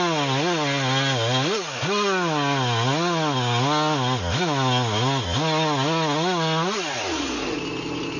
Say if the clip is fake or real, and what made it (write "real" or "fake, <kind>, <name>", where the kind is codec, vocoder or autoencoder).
real